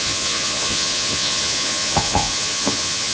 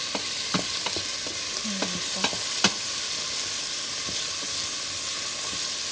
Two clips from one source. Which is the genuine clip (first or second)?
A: second